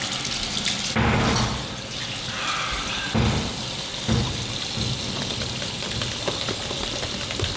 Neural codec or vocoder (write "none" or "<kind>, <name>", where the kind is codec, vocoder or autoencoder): none